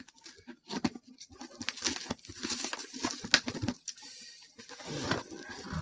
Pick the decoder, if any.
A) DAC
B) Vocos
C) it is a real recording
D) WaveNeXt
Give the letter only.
C